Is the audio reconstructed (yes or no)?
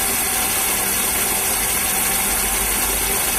no